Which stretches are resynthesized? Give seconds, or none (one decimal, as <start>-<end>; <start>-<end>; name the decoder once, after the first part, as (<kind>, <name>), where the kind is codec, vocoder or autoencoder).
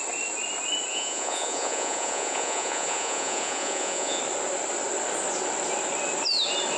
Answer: 0.9-4.2 (vocoder, Vocos)